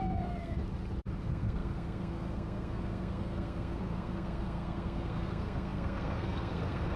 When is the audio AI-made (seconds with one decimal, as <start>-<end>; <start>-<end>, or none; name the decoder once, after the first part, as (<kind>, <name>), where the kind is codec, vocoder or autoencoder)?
0.0-0.6 (codec, SNAC); 1.2-7.0